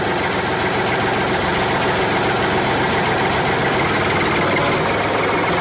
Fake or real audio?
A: real